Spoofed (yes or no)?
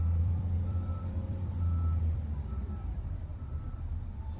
yes